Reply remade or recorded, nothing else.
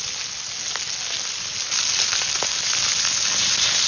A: recorded